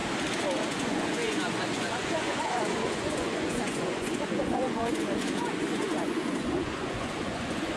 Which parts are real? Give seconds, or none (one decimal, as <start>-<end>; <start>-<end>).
0.0-0.7